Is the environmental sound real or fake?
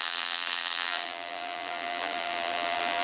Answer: fake